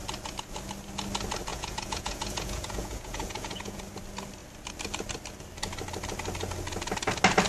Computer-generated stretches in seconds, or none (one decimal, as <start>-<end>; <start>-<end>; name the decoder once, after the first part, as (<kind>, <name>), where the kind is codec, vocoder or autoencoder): 1.5-3.8 (vocoder, Vocos)